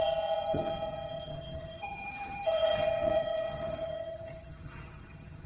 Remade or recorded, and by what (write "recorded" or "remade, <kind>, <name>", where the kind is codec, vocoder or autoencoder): remade, vocoder, HiFi-GAN